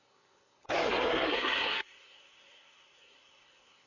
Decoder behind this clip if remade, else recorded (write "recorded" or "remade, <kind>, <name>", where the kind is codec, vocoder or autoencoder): remade, codec, SNAC